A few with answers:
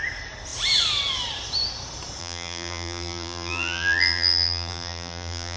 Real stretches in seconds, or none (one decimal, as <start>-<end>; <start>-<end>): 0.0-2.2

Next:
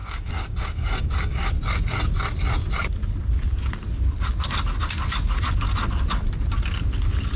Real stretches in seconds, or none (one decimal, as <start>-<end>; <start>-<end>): 1.5-7.4

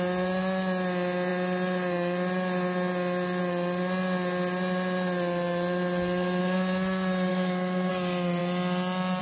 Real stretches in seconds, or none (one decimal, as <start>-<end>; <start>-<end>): 0.0-7.3; 7.9-9.2

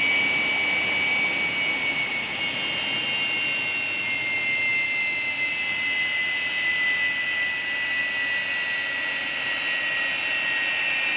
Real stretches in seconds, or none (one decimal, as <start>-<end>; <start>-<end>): 0.0-11.2